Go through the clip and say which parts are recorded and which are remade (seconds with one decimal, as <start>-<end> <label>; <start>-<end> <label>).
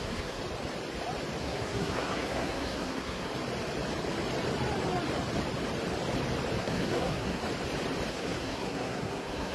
0.0-0.4 remade; 0.4-1.4 recorded; 1.4-3.3 remade; 3.3-6.6 recorded; 6.6-7.4 remade; 7.4-8.1 recorded; 8.1-9.5 remade